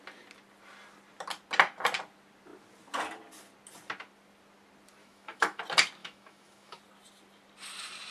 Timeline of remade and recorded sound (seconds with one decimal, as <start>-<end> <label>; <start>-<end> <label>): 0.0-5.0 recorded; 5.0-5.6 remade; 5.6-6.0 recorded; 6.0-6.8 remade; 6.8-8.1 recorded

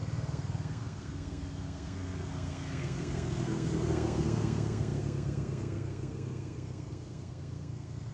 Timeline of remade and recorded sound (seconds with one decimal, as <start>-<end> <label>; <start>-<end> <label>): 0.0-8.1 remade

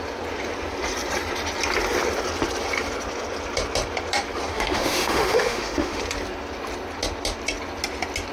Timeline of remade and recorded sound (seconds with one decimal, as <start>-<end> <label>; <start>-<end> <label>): 0.0-4.5 recorded; 4.5-6.0 remade; 6.0-8.3 recorded

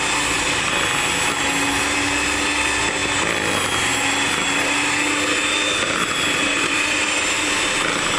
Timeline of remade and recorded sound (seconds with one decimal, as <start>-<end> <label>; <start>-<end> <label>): 0.0-8.2 recorded

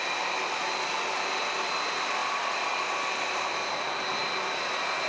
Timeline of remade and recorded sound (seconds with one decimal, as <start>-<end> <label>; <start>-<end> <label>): 0.0-5.1 recorded

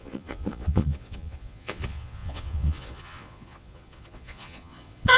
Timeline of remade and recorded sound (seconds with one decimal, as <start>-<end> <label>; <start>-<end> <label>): 0.0-5.2 remade

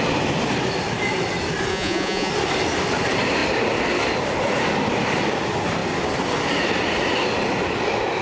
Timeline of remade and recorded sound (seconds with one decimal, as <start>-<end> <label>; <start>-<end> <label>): 0.0-1.7 recorded; 1.7-2.3 remade; 2.3-8.2 recorded